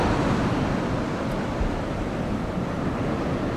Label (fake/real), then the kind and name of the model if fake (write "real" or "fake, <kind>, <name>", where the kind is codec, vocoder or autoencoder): real